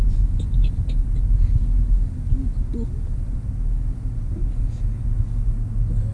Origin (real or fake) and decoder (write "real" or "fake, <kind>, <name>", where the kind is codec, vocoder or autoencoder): real